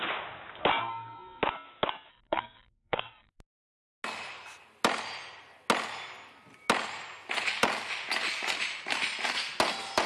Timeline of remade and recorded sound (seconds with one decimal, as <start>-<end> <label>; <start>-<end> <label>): 0.0-0.8 recorded; 0.8-1.4 remade; 1.4-2.1 recorded; 2.1-3.3 remade; 3.3-10.1 recorded